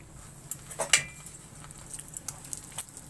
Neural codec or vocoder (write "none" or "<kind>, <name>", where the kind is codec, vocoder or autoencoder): none